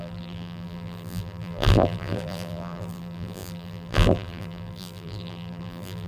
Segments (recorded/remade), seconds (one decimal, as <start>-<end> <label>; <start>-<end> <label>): 0.0-6.1 remade

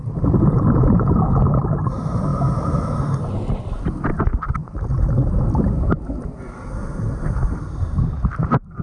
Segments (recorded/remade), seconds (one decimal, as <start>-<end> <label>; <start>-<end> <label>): 0.0-2.3 remade; 2.3-3.6 recorded; 3.6-8.8 remade

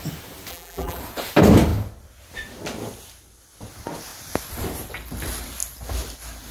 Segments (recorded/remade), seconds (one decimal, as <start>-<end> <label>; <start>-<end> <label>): 0.0-0.5 recorded; 0.5-1.0 remade; 1.0-6.5 recorded

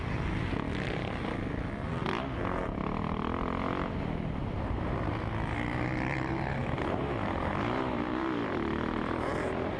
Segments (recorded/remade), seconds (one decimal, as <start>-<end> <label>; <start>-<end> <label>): 0.0-4.4 recorded; 4.4-5.2 remade; 5.2-6.6 recorded; 6.6-9.8 remade